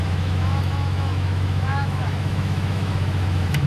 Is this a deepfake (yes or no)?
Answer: yes